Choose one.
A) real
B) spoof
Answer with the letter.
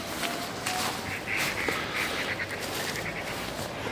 A